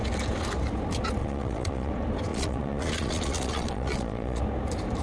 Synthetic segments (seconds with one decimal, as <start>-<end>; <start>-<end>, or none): 1.2-1.9; 2.3-4.4